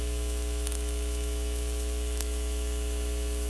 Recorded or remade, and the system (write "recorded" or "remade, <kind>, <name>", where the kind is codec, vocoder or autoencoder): remade, autoencoder, DAC-VAE